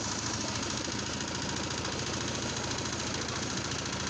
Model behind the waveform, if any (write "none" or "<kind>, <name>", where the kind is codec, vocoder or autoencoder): vocoder, BigVGAN v2